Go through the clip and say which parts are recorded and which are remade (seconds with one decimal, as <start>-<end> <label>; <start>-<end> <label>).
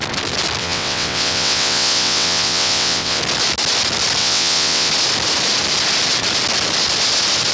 0.0-0.6 recorded; 0.6-3.2 remade; 3.2-4.2 recorded; 4.2-4.9 remade; 4.9-7.5 recorded